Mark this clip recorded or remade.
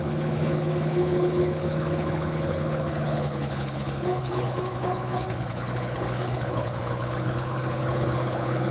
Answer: remade